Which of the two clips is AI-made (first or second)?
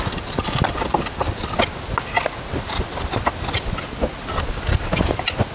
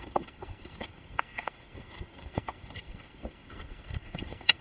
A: second